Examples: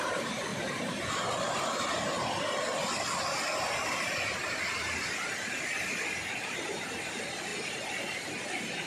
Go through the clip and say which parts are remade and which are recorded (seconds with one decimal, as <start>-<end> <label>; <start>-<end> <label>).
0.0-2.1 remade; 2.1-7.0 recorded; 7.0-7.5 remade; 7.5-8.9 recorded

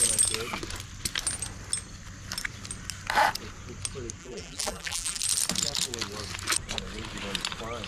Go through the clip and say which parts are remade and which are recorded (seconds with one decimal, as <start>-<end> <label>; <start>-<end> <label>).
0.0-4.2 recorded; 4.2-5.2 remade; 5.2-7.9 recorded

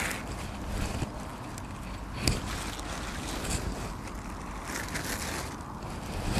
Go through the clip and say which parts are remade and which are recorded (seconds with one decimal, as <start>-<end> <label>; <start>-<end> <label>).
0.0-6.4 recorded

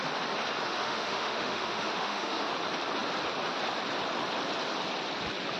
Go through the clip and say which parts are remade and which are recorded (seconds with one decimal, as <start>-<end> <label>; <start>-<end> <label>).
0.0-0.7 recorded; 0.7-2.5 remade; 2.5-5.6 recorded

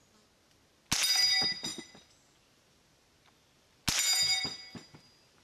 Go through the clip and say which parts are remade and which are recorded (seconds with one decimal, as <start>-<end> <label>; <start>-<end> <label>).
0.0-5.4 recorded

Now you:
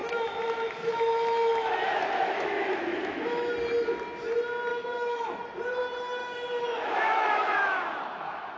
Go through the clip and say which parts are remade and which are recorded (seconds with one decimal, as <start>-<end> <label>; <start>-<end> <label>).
0.0-3.5 remade; 3.5-4.7 recorded; 4.7-5.4 remade; 5.4-6.2 recorded; 6.2-8.6 remade

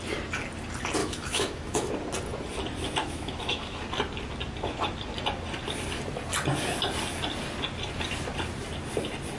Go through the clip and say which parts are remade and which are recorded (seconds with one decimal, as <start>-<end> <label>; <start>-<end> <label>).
0.0-1.0 recorded; 1.0-1.9 remade; 1.9-3.0 recorded; 3.0-3.8 remade; 3.8-9.4 recorded